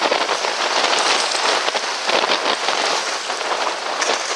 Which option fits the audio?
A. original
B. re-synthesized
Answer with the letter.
A